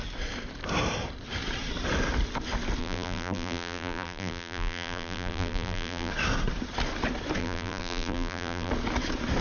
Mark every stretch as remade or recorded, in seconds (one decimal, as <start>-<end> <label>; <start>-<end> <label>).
0.0-2.8 recorded; 2.8-6.1 remade; 6.1-7.4 recorded; 7.4-8.7 remade; 8.7-9.4 recorded